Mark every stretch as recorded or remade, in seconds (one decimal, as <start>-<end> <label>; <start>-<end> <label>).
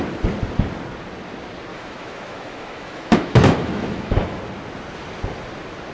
0.0-1.7 recorded; 1.7-4.4 remade; 4.4-5.9 recorded